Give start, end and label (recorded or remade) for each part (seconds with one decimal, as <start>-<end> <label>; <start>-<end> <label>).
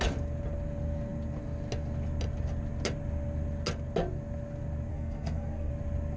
0.0-4.9 recorded; 4.9-5.7 remade; 5.7-6.2 recorded